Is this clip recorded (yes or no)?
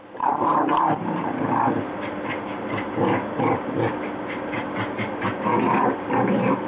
yes